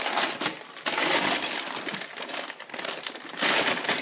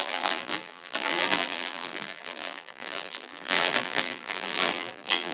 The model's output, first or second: second